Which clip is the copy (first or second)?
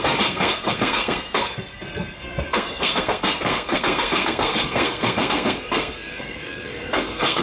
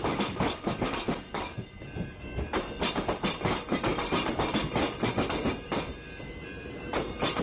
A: first